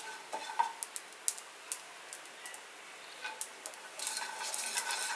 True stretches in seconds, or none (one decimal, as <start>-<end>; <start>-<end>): 0.0-5.2